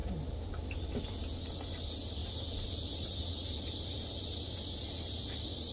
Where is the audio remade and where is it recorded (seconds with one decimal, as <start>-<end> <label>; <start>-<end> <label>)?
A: 0.0-0.9 remade; 0.9-2.2 recorded; 2.2-4.2 remade; 4.2-5.7 recorded